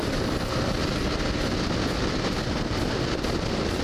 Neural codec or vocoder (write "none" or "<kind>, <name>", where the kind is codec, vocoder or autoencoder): none